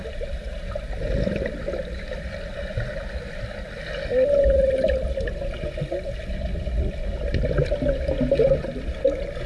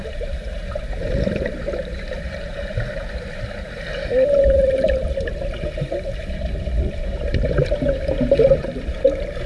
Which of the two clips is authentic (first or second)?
first